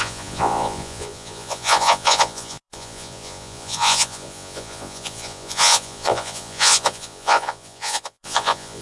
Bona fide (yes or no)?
no